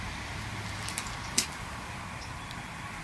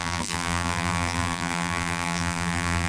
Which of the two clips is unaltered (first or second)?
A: first